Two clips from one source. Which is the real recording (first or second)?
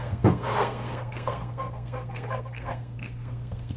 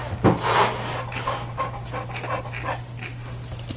second